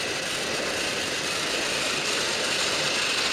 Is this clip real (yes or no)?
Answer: yes